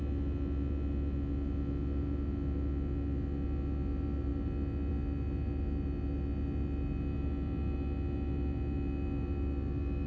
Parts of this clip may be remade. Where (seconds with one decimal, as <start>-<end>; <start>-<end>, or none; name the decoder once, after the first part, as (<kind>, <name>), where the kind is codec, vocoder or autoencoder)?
none